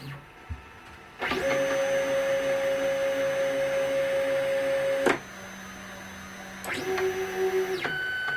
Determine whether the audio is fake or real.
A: real